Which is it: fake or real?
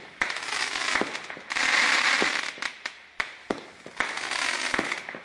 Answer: real